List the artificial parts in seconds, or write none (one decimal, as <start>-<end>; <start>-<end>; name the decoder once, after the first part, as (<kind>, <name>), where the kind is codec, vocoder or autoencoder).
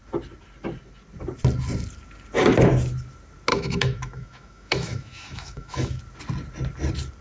3.5-6.0 (autoencoder, DAC-VAE)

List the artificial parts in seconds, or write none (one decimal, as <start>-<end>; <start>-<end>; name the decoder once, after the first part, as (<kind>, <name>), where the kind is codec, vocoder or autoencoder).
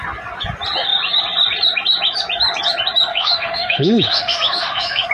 3.1-5.1 (autoencoder, DAC-VAE)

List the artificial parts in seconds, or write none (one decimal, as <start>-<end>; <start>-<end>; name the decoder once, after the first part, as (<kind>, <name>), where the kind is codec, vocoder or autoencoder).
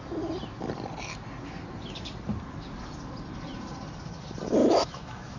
4.6-5.4 (autoencoder, DAC-VAE)